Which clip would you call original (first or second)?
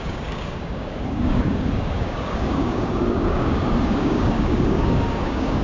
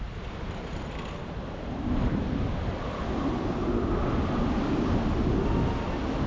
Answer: second